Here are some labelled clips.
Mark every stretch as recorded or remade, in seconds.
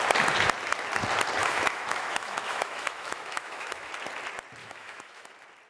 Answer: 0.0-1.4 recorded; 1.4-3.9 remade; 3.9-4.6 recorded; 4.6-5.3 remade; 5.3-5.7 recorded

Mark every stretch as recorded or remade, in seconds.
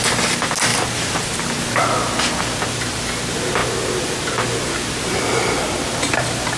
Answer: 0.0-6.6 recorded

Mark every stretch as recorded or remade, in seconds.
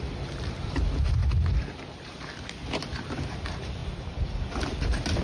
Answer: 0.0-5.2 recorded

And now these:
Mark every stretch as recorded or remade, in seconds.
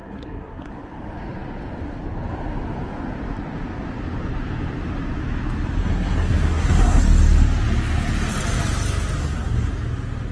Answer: 0.0-0.7 remade; 0.7-5.8 recorded; 5.8-7.0 remade; 7.0-9.2 recorded; 9.2-9.7 remade; 9.7-10.3 recorded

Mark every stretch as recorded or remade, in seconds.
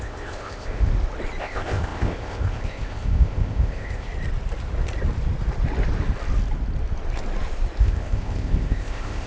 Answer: 0.0-0.9 remade; 0.9-1.4 recorded; 1.4-4.1 remade; 4.1-7.8 recorded; 7.8-9.3 remade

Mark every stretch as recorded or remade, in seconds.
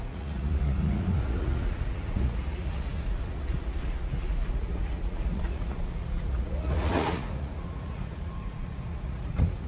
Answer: 0.0-9.7 remade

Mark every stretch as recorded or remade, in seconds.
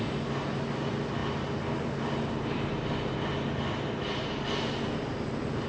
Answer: 0.0-5.7 recorded